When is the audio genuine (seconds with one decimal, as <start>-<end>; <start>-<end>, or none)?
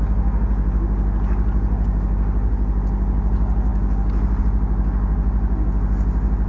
0.0-6.5